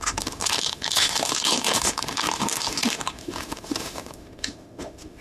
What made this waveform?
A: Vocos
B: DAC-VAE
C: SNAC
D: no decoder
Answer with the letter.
B